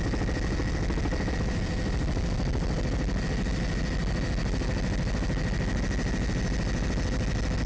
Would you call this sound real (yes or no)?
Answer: yes